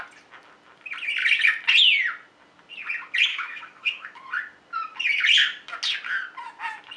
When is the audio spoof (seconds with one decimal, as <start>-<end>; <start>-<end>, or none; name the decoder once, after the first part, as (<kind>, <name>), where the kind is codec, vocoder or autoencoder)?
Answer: 3.3-4.2 (autoencoder, DAC-VAE)